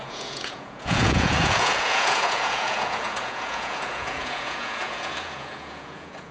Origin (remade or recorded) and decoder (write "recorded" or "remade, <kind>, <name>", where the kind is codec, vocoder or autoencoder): remade, vocoder, Vocos